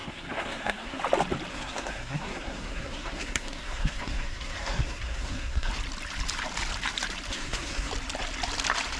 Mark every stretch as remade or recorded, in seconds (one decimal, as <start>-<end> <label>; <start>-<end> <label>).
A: 0.0-1.0 remade; 1.0-1.5 recorded; 1.5-5.7 remade; 5.7-7.3 recorded; 7.3-7.9 remade; 7.9-9.0 recorded